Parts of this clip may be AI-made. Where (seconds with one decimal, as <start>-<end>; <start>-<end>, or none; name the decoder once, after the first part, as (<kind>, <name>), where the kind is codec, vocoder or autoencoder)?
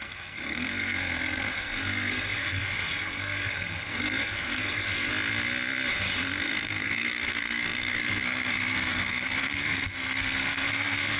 0.0-5.1 (codec, SNAC); 6.4-11.2